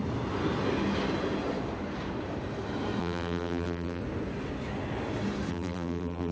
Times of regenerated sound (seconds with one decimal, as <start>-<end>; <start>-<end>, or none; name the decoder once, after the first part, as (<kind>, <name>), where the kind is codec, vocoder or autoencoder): 3.0-4.0 (vocoder, BigVGAN v2); 5.5-6.3

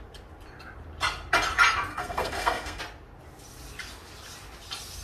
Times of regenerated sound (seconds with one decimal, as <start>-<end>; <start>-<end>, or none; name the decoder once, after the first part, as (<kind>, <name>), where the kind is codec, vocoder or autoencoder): 1.9-2.8 (codec, SNAC)

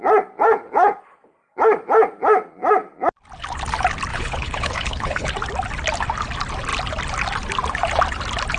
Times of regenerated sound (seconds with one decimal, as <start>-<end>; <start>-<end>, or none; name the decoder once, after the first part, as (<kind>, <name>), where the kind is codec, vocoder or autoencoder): 4.1-5.3 (codec, HILCodec)

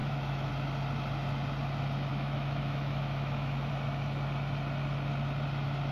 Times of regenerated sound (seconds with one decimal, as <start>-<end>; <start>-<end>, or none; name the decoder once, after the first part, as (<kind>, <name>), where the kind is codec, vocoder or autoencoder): 0.0-0.5 (autoencoder, DAC-VAE); 2.1-3.7

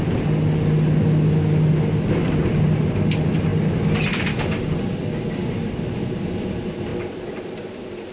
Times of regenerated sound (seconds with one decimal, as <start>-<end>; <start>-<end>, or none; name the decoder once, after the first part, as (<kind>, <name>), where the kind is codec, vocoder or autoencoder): none

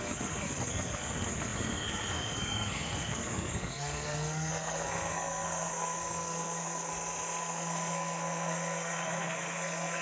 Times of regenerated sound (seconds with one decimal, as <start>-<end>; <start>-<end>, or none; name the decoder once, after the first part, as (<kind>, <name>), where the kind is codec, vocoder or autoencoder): 0.0-6.9 (codec, SNAC); 7.4-10.0

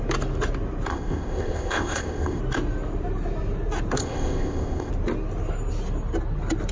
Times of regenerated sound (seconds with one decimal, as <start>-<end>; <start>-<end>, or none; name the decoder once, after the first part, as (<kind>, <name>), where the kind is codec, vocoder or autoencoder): 0.9-2.4 (codec, ZipCodec); 4.0-4.9